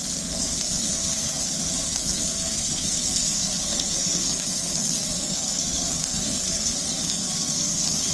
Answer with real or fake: fake